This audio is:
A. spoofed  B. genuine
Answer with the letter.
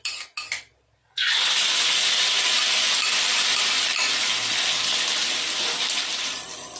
B